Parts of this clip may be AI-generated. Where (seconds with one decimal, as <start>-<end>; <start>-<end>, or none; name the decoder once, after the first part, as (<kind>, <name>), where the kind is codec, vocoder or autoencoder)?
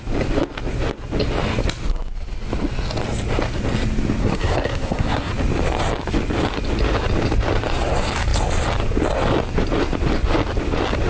4.2-5.3 (codec, SNAC)